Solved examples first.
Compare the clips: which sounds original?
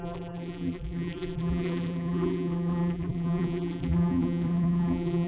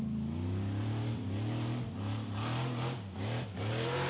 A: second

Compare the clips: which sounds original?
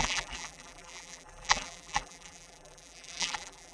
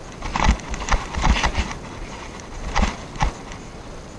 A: second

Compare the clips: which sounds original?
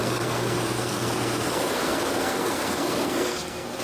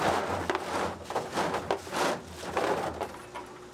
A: second